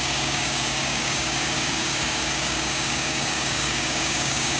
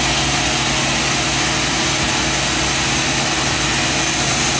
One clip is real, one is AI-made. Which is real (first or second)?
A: second